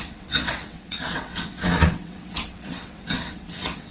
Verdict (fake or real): fake